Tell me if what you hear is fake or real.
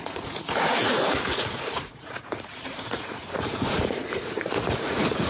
fake